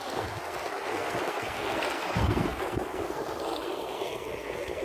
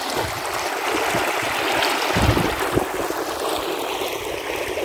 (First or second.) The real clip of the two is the second